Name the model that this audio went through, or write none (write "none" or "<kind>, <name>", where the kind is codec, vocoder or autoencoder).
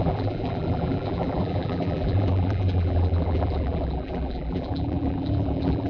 vocoder, BigVGAN v2